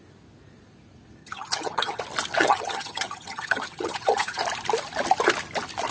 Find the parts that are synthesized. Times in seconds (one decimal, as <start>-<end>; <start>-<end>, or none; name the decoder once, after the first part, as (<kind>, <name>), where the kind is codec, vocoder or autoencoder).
1.2-2.0 (vocoder, HiFi-GAN); 2.4-4.4